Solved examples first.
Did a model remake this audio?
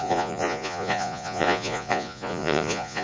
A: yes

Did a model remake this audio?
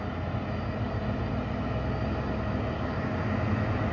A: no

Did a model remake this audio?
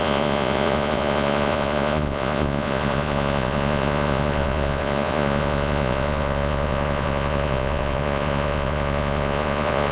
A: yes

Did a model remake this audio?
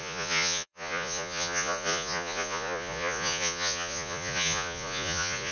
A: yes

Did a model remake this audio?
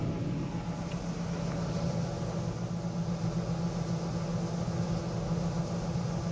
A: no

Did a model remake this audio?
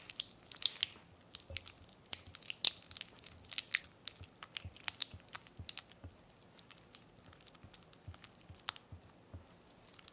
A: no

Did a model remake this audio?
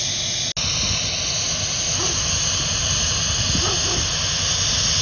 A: no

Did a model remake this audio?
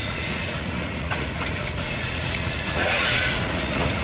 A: yes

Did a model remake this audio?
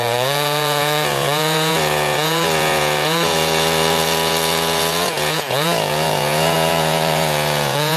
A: yes